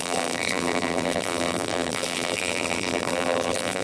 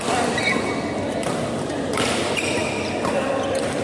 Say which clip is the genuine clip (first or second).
second